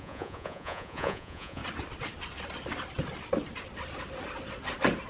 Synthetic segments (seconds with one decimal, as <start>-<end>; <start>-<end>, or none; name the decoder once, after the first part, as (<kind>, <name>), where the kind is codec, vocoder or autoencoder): 0.0-1.6 (vocoder, Vocos)